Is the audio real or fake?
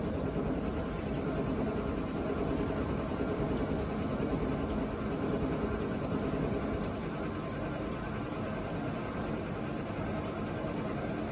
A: real